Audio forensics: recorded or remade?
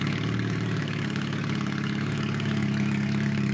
remade